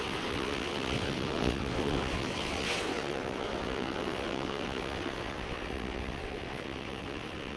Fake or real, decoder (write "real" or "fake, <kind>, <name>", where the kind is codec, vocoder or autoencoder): fake, vocoder, WaveNeXt